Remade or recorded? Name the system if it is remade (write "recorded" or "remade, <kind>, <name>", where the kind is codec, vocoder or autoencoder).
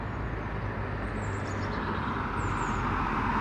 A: recorded